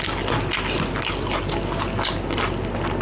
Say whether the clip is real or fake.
real